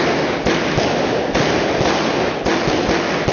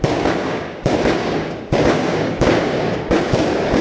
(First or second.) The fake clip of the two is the second